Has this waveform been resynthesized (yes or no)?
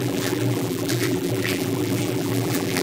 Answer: yes